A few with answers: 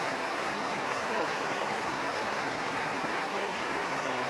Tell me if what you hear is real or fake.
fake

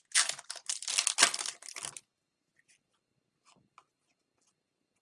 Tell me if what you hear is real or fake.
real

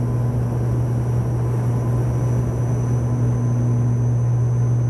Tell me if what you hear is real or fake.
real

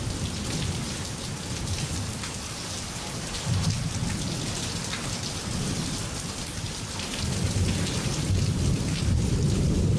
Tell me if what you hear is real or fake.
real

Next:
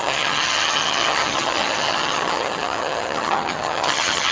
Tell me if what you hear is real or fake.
fake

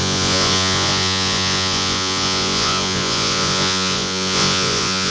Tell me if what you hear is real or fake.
fake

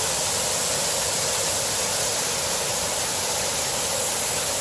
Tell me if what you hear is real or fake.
real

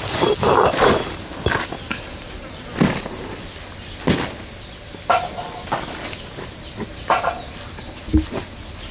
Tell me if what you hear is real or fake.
real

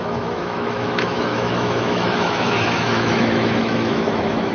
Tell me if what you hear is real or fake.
fake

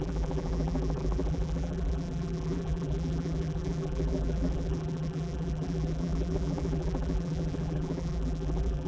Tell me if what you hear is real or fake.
fake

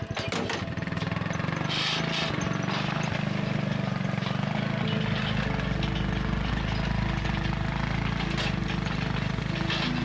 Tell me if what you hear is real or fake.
real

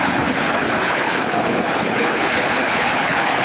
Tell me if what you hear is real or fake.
fake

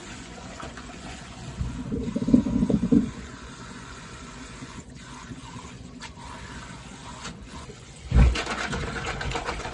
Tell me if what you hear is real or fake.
fake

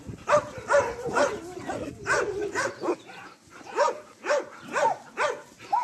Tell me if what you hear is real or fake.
real